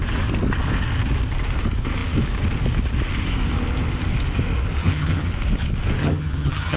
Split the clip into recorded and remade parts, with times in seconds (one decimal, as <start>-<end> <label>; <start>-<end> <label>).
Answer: 0.0-4.8 recorded; 4.8-5.3 remade; 5.3-6.0 recorded; 6.0-6.8 remade

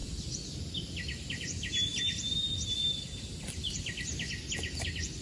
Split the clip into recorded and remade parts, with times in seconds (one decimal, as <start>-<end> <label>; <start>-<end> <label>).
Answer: 0.0-2.3 remade; 2.3-5.2 recorded

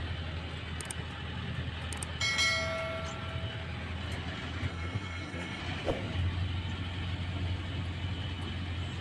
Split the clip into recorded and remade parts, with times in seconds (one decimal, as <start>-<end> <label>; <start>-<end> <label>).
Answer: 0.0-4.7 recorded; 4.7-5.6 remade; 5.6-9.0 recorded

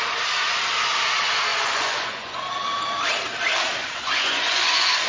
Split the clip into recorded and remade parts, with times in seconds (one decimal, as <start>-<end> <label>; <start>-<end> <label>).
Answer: 0.0-1.5 recorded; 1.5-2.5 remade; 2.5-3.8 recorded; 3.8-5.1 remade

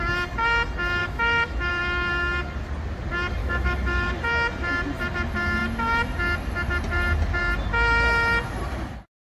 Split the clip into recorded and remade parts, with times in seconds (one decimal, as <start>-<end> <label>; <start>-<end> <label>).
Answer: 0.0-1.0 recorded; 1.0-1.7 remade; 1.7-3.4 recorded; 3.4-4.1 remade; 4.1-9.3 recorded

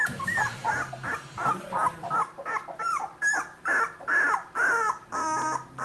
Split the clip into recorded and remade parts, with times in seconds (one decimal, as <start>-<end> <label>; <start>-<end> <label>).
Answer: 0.0-5.8 recorded

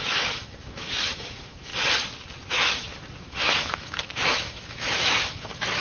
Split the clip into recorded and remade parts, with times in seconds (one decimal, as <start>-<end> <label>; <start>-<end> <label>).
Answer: 0.0-1.7 remade; 1.7-2.5 recorded; 2.5-5.8 remade